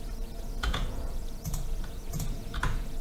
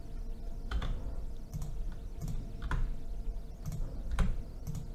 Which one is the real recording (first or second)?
second